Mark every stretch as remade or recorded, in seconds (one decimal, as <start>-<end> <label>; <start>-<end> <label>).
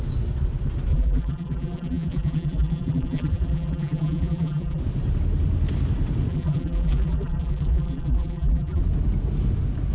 0.0-0.9 recorded; 0.9-4.8 remade; 4.8-6.3 recorded; 6.3-8.8 remade; 8.8-9.9 recorded